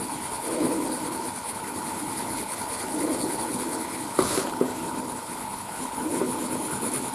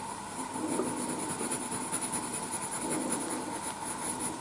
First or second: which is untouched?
second